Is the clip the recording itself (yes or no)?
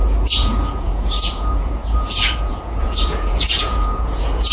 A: no